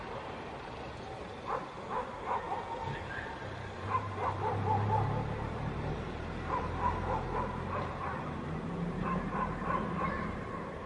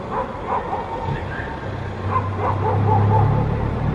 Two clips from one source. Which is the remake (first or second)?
first